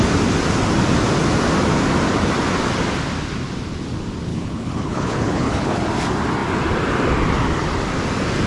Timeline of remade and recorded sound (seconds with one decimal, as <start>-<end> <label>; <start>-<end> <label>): 0.0-4.3 recorded; 4.3-5.8 remade; 5.8-8.5 recorded